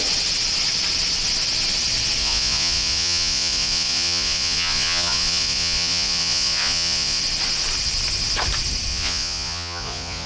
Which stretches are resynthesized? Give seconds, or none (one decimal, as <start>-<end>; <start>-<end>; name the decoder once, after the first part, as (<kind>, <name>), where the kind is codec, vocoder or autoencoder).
2.2-7.2 (vocoder, Vocos); 8.9-10.3